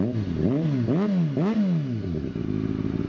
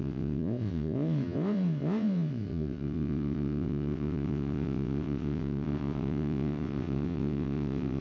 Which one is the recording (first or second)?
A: first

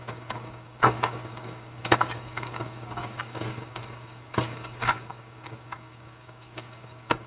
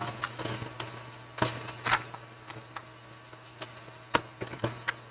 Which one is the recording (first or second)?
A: second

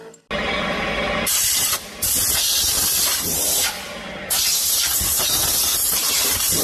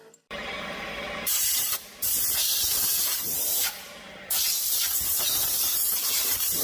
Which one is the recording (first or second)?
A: first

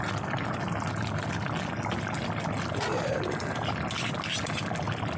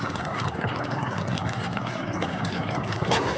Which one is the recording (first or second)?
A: first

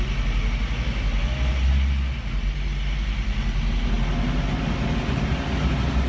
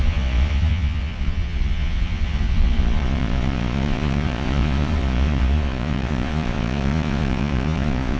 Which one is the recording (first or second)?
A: first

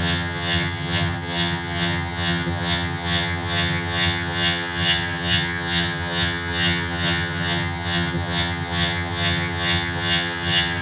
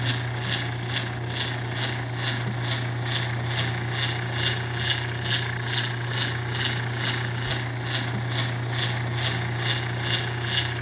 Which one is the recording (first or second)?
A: second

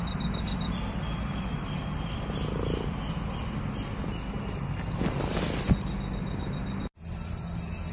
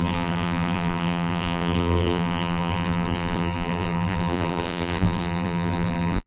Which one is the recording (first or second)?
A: first